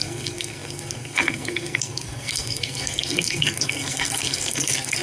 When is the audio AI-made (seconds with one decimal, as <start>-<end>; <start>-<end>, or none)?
0.0-5.0